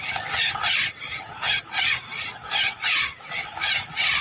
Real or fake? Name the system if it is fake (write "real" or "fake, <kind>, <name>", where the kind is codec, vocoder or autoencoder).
fake, vocoder, BigVGAN v2